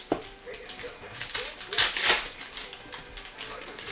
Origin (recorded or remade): recorded